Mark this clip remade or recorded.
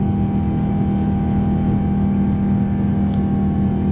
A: recorded